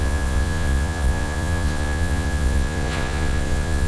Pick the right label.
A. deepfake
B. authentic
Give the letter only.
A